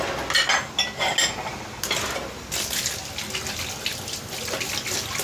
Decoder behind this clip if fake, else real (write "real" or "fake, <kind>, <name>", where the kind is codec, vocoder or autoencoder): real